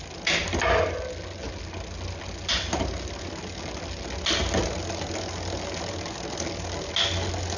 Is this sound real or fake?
real